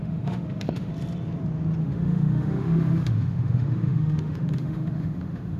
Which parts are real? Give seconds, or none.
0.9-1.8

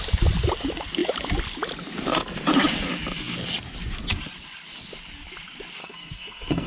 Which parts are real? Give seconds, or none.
0.0-5.8

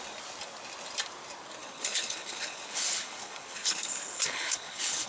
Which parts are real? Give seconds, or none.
0.0-1.6

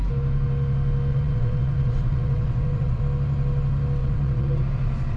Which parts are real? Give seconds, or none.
0.0-1.1; 3.0-4.0; 4.5-5.2

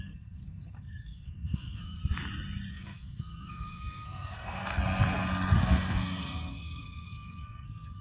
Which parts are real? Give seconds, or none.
2.0-2.7; 4.8-5.6